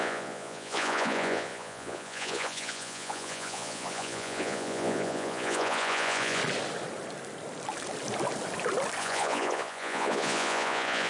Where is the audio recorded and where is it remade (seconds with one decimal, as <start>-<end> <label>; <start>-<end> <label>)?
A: 0.0-6.4 remade; 6.4-9.0 recorded; 9.0-11.1 remade